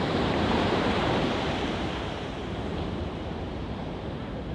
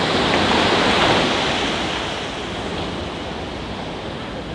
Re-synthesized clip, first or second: first